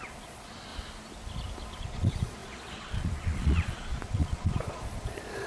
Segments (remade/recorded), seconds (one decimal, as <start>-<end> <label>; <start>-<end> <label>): 0.0-0.7 remade; 0.7-1.8 recorded; 1.8-5.5 remade